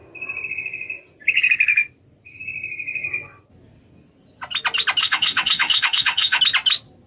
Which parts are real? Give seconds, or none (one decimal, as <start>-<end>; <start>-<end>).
0.0-5.0; 6.4-7.1